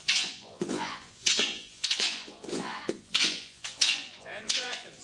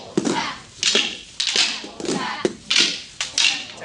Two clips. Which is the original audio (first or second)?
second